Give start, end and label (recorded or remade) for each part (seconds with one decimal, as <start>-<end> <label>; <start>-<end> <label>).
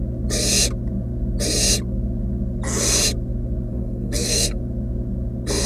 0.0-3.7 recorded; 3.7-4.6 remade; 4.6-5.7 recorded